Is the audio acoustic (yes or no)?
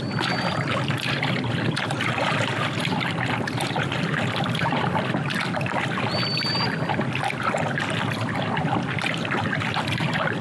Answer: yes